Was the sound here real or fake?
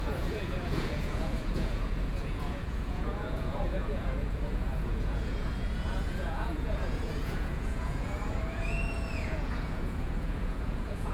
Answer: fake